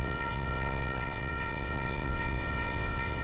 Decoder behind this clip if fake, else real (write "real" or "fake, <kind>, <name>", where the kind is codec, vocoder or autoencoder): fake, vocoder, WaveNeXt